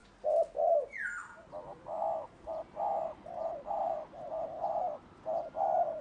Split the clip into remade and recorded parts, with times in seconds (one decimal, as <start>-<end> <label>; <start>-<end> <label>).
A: 0.0-1.2 recorded; 1.2-4.8 remade; 4.8-6.0 recorded